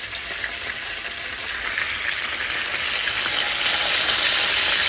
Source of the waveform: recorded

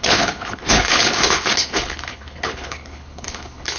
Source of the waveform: remade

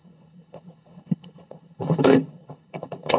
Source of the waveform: remade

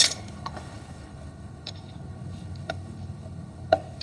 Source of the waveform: remade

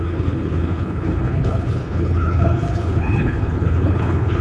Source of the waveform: remade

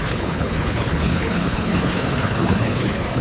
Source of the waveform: remade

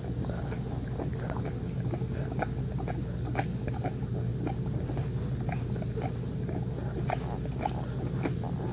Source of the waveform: recorded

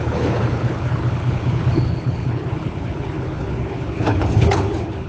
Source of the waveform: remade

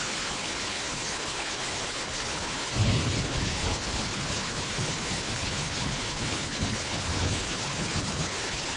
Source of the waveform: remade